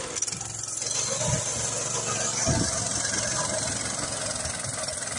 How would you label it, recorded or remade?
recorded